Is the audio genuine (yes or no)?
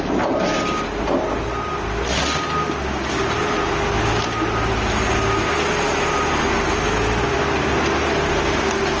yes